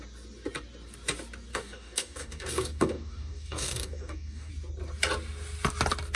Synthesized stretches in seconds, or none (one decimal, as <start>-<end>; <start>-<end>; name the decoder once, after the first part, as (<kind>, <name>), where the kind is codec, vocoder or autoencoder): 1.5-4.5 (codec, DAC)